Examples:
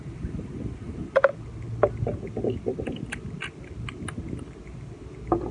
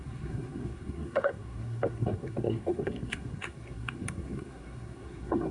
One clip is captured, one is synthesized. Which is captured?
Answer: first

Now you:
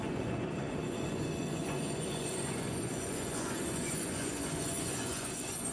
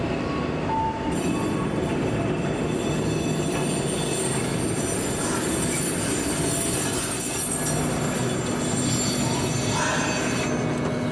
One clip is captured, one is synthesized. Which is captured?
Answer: second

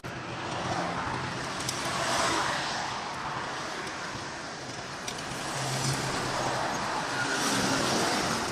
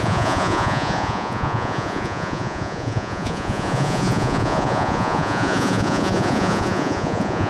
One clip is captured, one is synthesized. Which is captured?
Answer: first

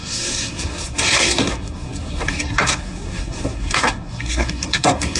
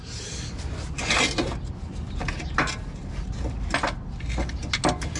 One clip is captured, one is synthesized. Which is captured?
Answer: second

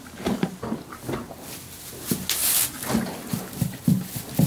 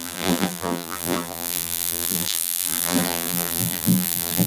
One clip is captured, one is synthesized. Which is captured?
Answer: first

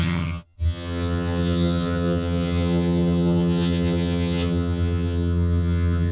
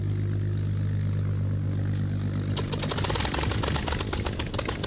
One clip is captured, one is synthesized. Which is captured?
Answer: second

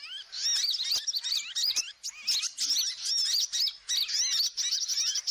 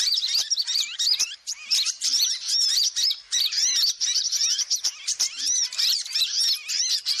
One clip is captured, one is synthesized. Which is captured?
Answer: first